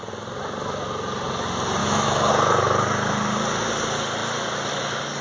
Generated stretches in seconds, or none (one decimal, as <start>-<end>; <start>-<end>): 1.8-2.3